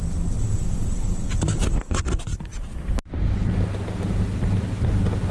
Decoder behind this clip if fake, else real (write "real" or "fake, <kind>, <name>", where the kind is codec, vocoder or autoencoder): real